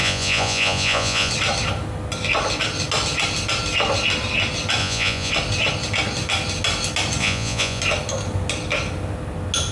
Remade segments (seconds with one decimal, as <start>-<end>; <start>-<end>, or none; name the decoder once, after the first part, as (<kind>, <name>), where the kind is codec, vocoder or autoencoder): 0.0-1.3 (vocoder, Vocos); 4.8-5.3; 7.2-7.8